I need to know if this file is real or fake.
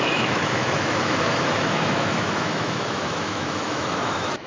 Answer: fake